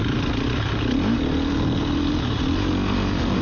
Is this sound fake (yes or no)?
no